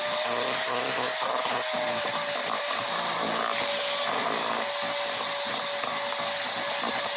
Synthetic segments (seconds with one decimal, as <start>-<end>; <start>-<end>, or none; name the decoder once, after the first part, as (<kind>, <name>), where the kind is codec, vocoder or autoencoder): none